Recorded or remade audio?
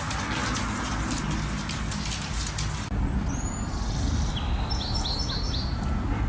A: recorded